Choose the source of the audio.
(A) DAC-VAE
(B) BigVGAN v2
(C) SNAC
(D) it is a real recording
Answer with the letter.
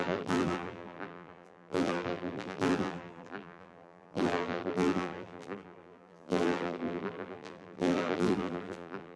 B